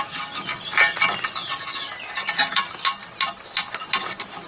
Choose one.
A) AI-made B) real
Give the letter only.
B